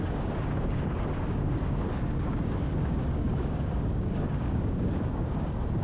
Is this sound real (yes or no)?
no